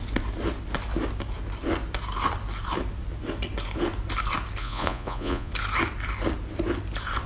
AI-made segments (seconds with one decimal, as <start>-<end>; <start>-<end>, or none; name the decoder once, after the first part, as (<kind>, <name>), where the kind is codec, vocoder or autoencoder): 4.6-5.5 (vocoder, Vocos)

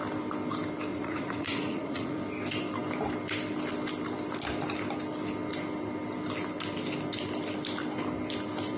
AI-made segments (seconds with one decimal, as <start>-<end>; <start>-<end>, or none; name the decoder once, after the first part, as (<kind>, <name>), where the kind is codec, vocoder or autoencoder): 0.9-2.2 (vocoder, Vocos)

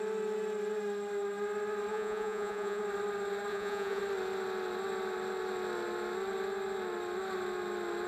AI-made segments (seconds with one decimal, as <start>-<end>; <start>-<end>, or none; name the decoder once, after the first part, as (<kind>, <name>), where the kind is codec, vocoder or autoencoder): 1.9-2.8 (vocoder, Vocos); 3.5-4.0

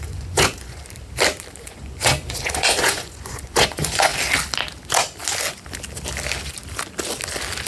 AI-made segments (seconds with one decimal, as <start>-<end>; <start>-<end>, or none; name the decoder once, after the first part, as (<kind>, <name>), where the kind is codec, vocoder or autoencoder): 0.0-0.8 (vocoder, Vocos); 1.6-4.1

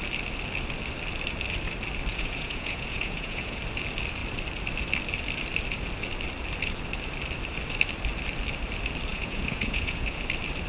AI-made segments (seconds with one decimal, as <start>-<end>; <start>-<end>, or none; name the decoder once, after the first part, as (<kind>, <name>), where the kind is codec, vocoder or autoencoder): 2.1-3.6 (vocoder, Vocos); 9.1-10.2